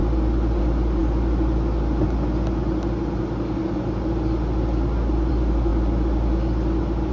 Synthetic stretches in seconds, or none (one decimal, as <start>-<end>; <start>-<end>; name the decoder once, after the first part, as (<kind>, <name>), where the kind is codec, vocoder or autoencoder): none